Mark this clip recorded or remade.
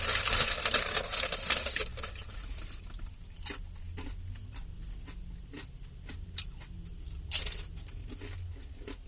recorded